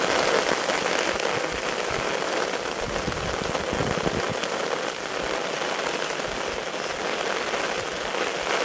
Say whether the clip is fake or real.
real